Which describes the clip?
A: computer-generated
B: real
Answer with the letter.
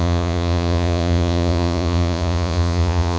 A